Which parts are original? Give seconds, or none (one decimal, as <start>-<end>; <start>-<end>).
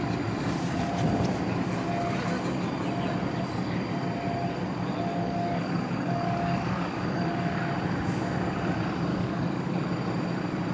0.0-5.1; 7.6-9.1; 9.8-10.7